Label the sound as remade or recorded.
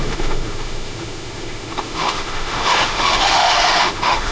remade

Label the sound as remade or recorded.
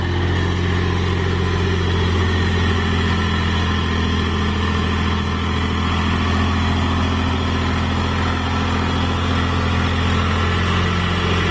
recorded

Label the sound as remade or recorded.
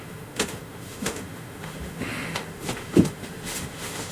remade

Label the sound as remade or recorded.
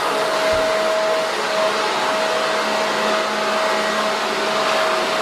recorded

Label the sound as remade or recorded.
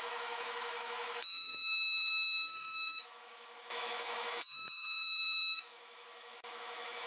remade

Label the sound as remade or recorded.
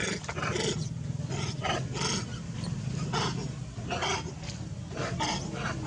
recorded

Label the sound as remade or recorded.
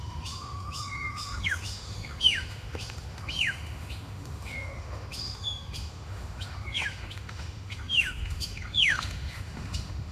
remade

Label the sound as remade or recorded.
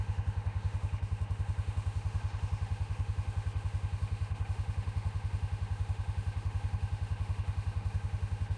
remade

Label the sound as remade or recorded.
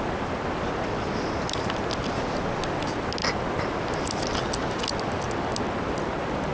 recorded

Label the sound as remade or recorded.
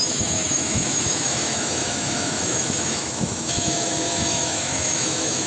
remade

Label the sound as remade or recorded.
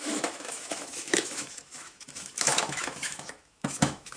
remade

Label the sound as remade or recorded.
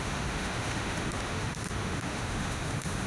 remade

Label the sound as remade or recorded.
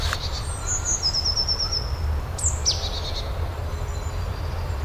recorded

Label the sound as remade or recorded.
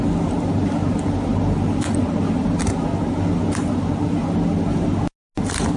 recorded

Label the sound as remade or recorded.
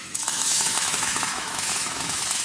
remade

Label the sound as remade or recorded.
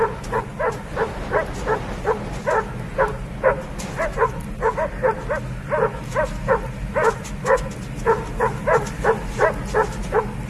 recorded